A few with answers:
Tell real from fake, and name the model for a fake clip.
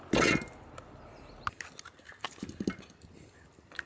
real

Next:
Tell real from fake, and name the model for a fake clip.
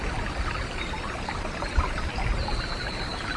real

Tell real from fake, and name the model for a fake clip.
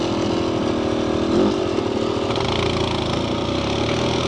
real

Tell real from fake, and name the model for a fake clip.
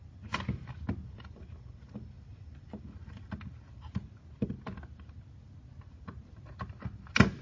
real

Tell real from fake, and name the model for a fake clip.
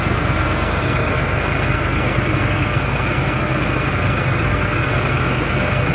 fake, codec, SNAC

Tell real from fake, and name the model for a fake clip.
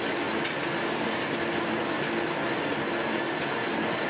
real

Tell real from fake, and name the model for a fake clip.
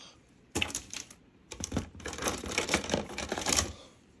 fake, vocoder, BigVGAN v2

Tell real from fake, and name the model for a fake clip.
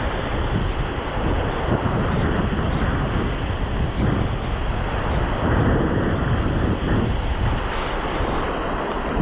real